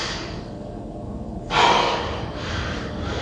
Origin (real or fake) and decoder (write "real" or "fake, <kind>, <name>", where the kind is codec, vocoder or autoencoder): fake, codec, DAC